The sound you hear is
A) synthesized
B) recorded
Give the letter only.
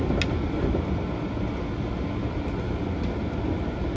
B